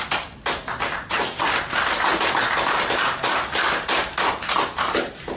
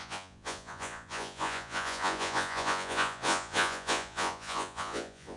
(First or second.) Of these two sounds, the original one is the first